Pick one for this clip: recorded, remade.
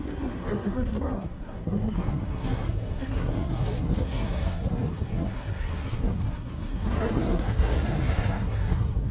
remade